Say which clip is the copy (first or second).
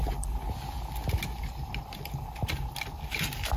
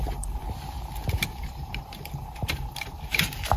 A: second